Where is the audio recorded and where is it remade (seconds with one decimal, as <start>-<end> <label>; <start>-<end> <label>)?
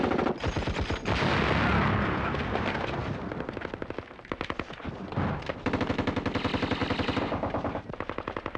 0.0-8.6 recorded